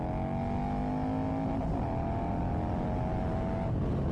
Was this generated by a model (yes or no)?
no